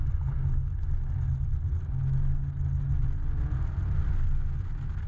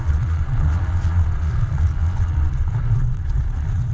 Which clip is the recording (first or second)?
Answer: first